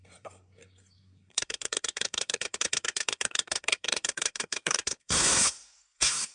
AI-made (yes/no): yes